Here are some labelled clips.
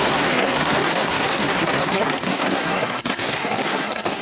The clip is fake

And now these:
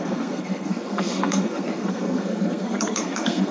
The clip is fake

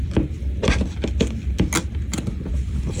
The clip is real